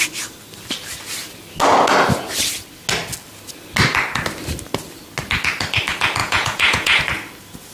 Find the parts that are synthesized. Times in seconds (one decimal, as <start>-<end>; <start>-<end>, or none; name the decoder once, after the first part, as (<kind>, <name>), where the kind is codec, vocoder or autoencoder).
6.2-7.0 (vocoder, Vocos)